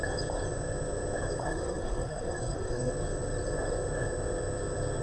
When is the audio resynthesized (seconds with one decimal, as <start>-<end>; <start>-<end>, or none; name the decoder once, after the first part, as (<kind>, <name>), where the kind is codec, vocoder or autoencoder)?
1.4-2.9 (codec, SNAC)